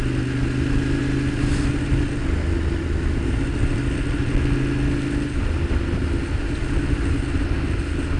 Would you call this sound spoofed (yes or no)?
no